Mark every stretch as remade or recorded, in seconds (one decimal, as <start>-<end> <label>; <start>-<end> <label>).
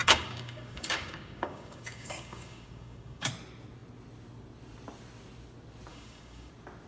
0.0-3.3 remade; 3.3-5.9 recorded; 5.9-6.5 remade; 6.5-6.9 recorded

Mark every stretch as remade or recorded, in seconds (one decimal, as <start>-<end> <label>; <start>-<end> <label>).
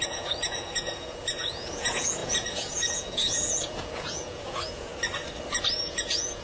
0.0-4.9 remade; 4.9-5.8 recorded; 5.8-6.4 remade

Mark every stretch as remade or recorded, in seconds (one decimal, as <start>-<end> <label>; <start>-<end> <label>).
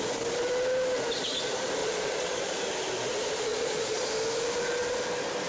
0.0-1.8 recorded; 1.8-2.6 remade; 2.6-3.5 recorded; 3.5-4.1 remade; 4.1-5.5 recorded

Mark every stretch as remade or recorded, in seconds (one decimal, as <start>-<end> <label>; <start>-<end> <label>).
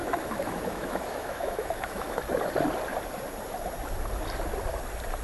0.0-2.2 remade; 2.2-5.2 recorded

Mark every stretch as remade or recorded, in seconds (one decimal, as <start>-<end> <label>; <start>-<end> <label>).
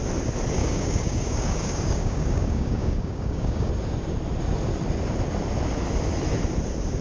0.0-0.6 recorded; 0.6-3.7 remade; 3.7-7.0 recorded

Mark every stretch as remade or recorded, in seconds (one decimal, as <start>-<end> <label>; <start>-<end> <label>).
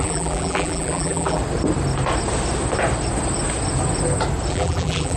0.0-1.4 remade; 1.4-4.5 recorded; 4.5-5.2 remade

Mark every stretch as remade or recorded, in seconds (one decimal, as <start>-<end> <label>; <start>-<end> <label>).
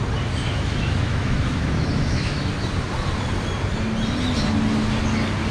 0.0-0.4 recorded; 0.4-2.5 remade; 2.5-5.5 recorded